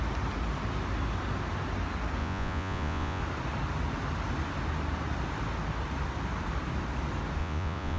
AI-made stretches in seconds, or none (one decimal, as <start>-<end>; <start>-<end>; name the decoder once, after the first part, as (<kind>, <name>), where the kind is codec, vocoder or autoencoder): 2.2-3.2 (vocoder, Vocos); 7.4-8.0